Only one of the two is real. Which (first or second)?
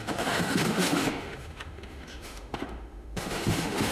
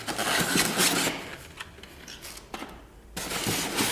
second